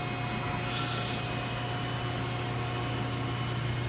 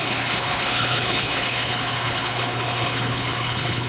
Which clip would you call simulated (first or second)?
second